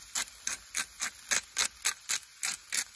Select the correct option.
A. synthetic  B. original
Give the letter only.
B